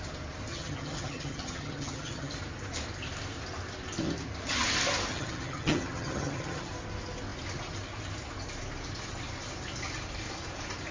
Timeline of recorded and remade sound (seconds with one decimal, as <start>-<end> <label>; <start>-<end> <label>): 0.0-0.5 recorded; 0.5-2.3 remade; 2.3-5.1 recorded; 5.1-6.7 remade; 6.7-10.9 recorded